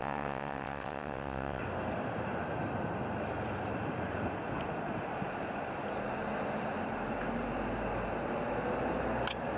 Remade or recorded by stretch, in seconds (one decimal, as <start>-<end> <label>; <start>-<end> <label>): 0.0-1.6 remade; 1.6-9.6 recorded